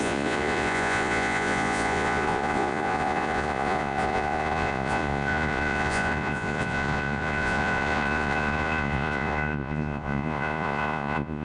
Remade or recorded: remade